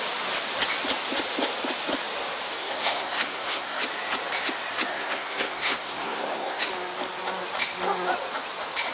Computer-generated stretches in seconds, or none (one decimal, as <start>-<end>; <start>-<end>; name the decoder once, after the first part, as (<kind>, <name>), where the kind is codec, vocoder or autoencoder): 2.5-3.8 (codec, SNAC); 4.9-6.7